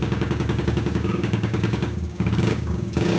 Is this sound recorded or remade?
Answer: remade